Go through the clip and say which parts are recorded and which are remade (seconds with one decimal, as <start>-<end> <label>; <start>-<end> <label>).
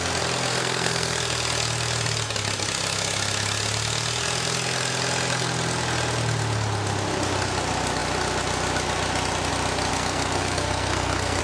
0.0-0.5 recorded; 0.5-1.2 remade; 1.2-9.9 recorded; 9.9-11.4 remade